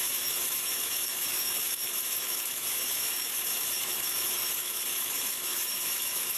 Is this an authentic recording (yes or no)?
no